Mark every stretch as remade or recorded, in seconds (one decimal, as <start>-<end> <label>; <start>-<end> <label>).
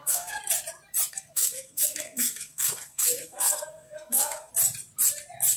0.0-0.4 remade; 0.4-1.1 recorded; 1.1-4.5 remade; 4.5-5.6 recorded